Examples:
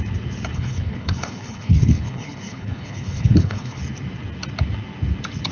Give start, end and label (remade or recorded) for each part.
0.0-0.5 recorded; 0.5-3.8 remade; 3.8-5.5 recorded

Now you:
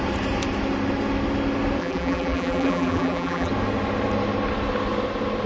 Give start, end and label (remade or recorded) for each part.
0.0-1.8 recorded; 1.8-3.5 remade; 3.5-5.5 recorded